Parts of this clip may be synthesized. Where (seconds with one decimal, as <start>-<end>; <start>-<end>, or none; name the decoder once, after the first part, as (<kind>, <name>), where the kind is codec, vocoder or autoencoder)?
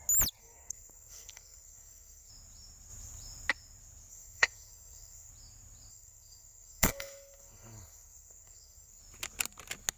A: 0.4-2.3 (codec, SNAC); 4.1-5.3; 5.9-9.0